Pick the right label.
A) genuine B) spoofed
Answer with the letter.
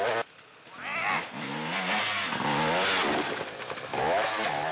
A